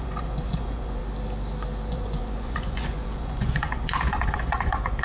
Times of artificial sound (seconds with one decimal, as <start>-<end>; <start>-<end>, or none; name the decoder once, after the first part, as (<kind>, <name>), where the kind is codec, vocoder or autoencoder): 0.0-1.0 (vocoder, Vocos); 1.9-5.0